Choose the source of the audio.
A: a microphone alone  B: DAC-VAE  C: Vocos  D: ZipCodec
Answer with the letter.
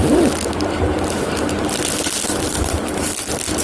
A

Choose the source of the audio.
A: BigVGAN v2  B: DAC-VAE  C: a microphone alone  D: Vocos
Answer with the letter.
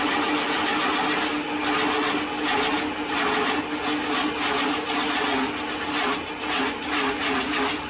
C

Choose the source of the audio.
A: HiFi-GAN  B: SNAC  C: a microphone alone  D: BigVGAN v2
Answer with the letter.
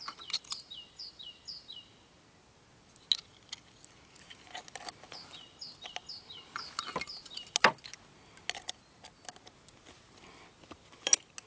C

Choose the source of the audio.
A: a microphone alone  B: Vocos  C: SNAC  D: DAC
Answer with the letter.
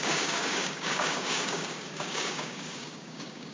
D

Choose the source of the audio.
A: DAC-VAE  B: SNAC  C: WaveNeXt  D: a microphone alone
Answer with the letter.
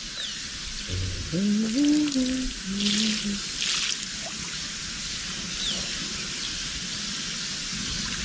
D